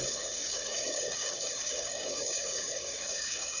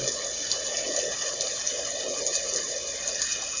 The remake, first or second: first